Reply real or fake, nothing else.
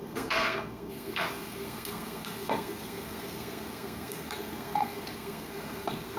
fake